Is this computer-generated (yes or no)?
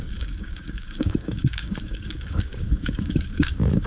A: yes